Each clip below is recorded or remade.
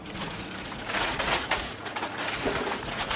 remade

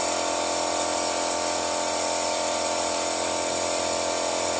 remade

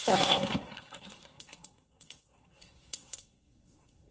remade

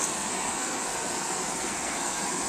remade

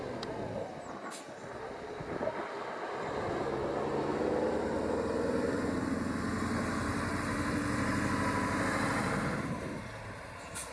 recorded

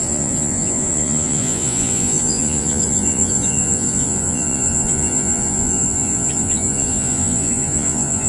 remade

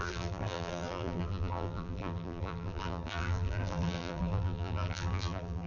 remade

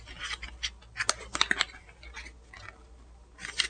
recorded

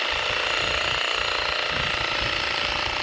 recorded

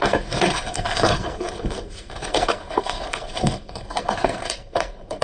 remade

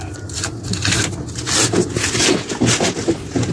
recorded